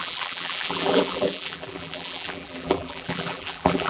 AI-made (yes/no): yes